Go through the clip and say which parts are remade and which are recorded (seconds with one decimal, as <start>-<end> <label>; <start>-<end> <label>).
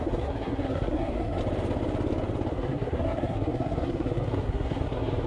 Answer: 0.0-1.4 remade; 1.4-2.5 recorded; 2.5-5.3 remade